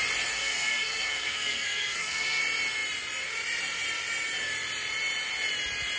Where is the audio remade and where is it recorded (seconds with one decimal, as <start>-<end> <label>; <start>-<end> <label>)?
0.0-0.4 recorded; 0.4-2.4 remade; 2.4-6.0 recorded